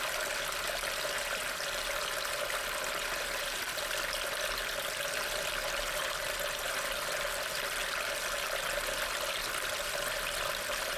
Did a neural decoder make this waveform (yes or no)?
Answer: no